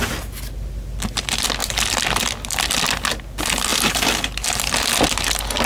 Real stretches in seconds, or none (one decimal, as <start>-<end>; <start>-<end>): 0.0-5.7